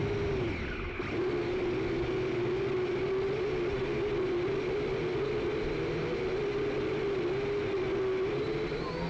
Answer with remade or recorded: recorded